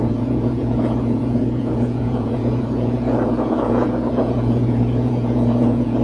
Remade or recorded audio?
remade